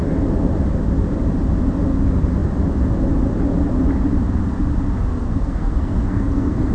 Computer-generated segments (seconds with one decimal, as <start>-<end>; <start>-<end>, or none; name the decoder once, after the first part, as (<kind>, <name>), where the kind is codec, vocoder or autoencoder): 5.1-6.7 (codec, SNAC)